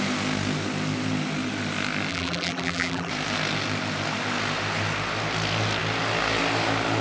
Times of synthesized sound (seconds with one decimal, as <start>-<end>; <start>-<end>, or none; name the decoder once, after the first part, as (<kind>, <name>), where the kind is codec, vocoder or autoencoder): 2.1-3.1 (vocoder, BigVGAN v2)